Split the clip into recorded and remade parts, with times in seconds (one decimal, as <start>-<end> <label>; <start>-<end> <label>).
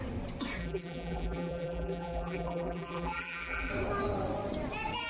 0.0-0.6 recorded; 0.6-3.7 remade; 3.7-5.1 recorded